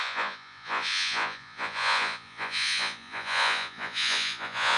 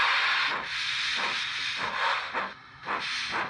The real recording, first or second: second